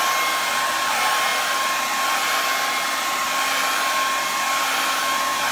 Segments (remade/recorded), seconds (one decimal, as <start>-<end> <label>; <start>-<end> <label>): 0.0-5.5 recorded